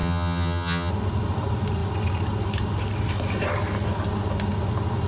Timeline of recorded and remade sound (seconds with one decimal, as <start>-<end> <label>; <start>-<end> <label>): 0.0-0.9 remade; 0.9-5.1 recorded